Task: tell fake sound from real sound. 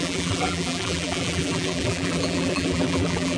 fake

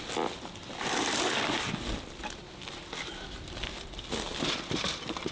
real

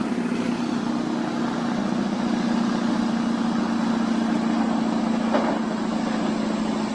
real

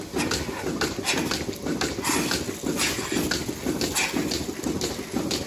real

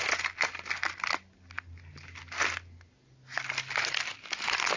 real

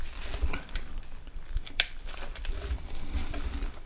fake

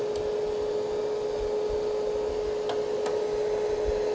real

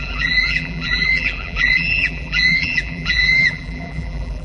fake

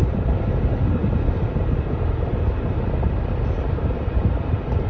fake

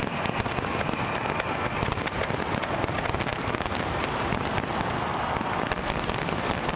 real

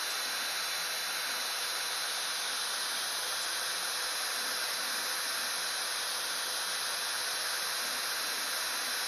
real